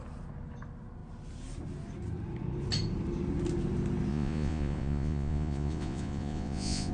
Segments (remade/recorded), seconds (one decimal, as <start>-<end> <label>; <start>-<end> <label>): 0.0-4.1 recorded; 4.1-6.9 remade